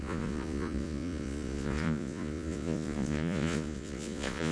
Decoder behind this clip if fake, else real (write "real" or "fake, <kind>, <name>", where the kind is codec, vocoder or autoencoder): fake, vocoder, Vocos